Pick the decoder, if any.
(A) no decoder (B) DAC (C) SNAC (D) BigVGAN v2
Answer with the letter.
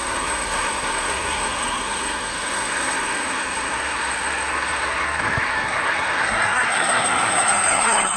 C